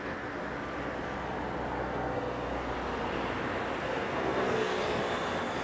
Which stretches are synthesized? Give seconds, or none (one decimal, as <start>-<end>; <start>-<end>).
1.8-2.7; 3.8-4.8